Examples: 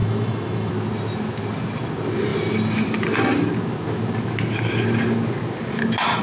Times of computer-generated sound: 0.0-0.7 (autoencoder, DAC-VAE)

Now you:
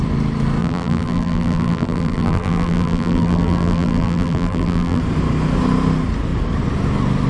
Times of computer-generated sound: 0.6-5.0 (vocoder, BigVGAN v2)

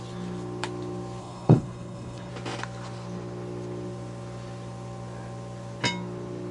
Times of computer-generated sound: 1.2-2.3 (codec, HILCodec)

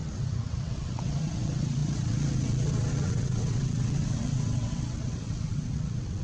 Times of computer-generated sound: 0.0-6.2 (vocoder, WaveNeXt)

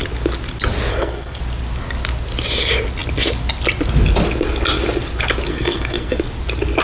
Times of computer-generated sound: 0.9-1.4 (codec, SNAC); 5.5-6.2

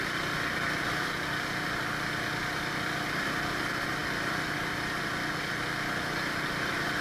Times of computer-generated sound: none

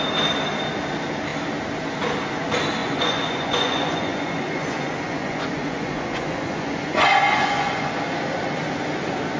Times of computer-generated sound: 2.8-7.9 (vocoder, Vocos)